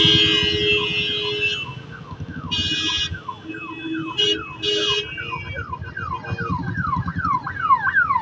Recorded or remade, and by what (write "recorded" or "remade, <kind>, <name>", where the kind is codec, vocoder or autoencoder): recorded